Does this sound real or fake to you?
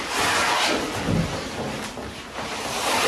real